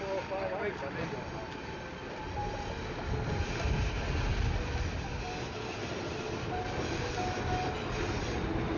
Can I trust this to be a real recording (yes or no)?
yes